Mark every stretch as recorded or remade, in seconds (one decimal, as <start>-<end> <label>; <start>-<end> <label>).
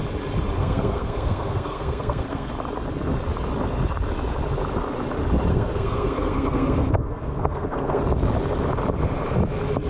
0.0-0.6 recorded; 0.6-2.5 remade; 2.5-5.5 recorded; 5.5-8.0 remade; 8.0-9.9 recorded